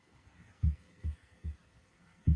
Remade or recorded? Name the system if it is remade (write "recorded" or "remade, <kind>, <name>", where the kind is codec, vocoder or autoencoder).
remade, codec, SNAC